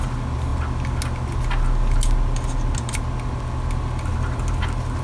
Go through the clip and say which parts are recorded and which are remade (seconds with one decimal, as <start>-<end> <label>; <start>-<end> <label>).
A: 0.0-5.0 recorded